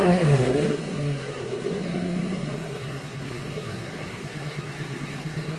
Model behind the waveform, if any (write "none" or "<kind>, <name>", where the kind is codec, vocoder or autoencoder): codec, SNAC